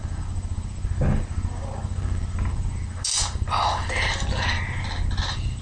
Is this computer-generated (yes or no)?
no